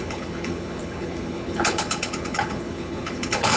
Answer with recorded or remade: remade